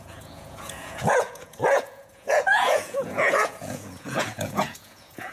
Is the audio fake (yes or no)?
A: yes